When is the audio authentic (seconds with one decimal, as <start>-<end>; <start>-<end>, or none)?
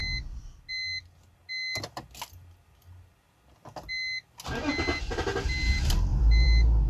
0.0-6.1